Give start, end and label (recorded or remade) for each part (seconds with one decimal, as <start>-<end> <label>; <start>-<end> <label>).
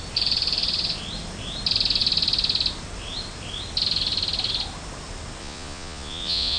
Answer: 0.0-5.4 recorded; 5.4-6.6 remade